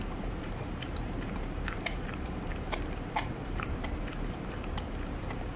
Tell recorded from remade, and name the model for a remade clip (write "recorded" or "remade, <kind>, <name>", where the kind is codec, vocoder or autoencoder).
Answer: remade, vocoder, BigVGAN v2